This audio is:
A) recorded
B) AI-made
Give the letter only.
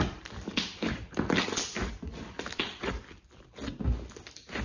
A